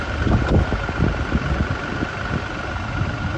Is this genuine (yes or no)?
yes